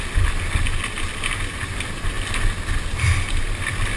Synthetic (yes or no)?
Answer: no